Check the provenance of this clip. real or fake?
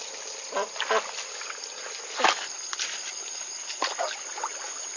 real